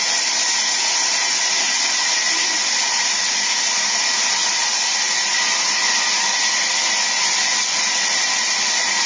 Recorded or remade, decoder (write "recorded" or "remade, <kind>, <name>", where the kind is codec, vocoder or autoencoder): recorded